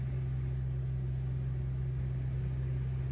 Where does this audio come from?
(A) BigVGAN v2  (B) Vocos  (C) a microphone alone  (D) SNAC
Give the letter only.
C